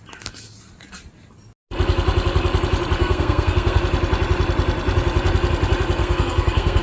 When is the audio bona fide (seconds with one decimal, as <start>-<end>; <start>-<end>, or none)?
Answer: 0.0-3.0; 3.8-6.0